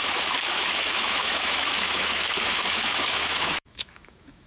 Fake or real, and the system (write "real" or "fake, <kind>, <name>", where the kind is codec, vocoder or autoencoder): fake, autoencoder, DAC-VAE